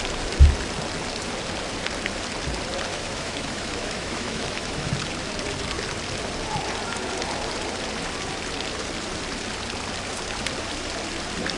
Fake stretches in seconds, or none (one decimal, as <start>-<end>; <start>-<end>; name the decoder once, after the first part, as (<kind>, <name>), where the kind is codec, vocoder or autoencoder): 2.9-4.9 (autoencoder, DAC-VAE)